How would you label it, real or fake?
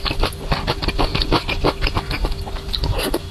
real